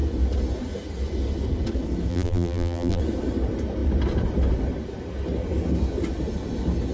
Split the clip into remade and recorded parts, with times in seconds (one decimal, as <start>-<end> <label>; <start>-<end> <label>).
0.0-2.1 recorded; 2.1-3.0 remade; 3.0-6.9 recorded